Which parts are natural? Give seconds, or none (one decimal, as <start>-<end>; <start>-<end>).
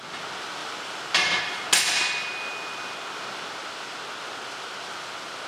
0.0-0.6; 1.4-5.5